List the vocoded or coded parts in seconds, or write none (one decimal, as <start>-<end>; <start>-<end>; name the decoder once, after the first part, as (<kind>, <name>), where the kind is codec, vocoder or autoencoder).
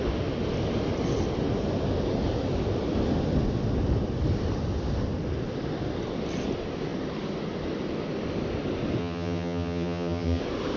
9.0-10.4 (vocoder, HiFi-GAN)